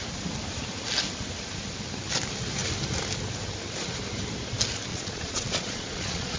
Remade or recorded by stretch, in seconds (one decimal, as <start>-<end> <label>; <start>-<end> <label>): 0.0-4.9 recorded; 4.9-6.4 remade